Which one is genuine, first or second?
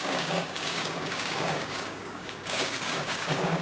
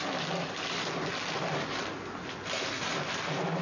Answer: second